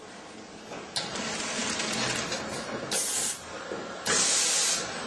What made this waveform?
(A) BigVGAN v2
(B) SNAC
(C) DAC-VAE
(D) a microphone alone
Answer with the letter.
D